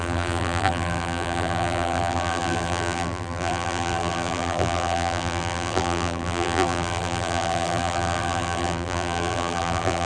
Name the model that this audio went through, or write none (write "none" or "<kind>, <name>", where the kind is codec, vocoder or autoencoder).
vocoder, BigVGAN v2